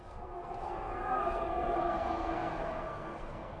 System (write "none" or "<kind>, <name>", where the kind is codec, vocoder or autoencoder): codec, SNAC